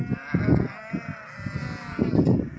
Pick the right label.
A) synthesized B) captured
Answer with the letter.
B